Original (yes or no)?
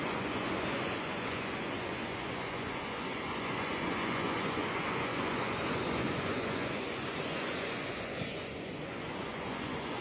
no